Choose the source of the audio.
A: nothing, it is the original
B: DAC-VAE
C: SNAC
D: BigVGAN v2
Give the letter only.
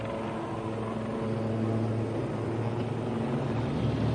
A